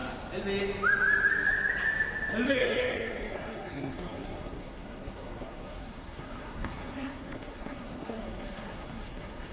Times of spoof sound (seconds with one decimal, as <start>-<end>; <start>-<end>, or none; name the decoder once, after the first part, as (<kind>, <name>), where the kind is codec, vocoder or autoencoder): 2.5-9.5 (codec, SNAC)